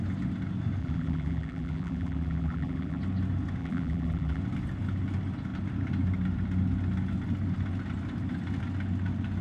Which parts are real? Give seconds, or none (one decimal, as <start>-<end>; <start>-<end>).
0.0-0.8; 3.0-3.6; 4.4-9.4